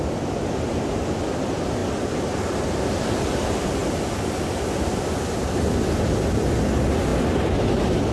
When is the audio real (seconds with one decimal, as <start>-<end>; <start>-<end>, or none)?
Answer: 0.0-8.1